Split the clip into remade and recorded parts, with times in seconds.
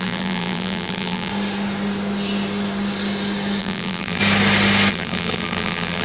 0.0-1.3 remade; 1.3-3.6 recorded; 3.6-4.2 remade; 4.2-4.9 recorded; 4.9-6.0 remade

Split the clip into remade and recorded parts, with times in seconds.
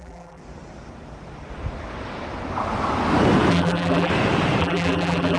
0.0-0.4 remade; 0.4-3.5 recorded; 3.5-4.1 remade; 4.1-4.6 recorded; 4.6-5.4 remade